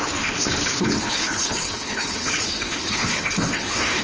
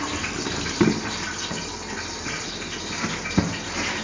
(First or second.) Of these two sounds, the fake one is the first